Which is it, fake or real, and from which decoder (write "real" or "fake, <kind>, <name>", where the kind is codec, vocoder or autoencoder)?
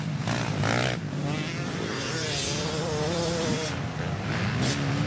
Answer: real